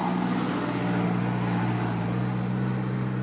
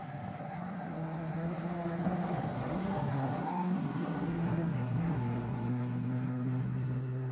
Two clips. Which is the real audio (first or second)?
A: first